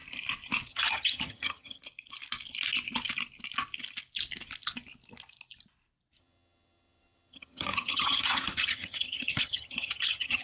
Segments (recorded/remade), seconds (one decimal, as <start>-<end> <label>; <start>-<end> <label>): 0.0-0.7 recorded; 0.7-1.8 remade; 1.8-6.2 recorded; 6.2-10.4 remade